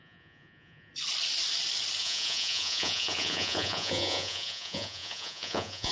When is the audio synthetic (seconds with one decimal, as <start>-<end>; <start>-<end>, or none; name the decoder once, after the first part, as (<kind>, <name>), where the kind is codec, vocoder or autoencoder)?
0.0-0.9 (vocoder, Vocos); 2.0-5.9